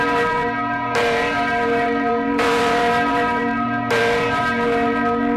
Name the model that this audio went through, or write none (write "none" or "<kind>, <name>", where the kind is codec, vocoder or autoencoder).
vocoder, BigVGAN v2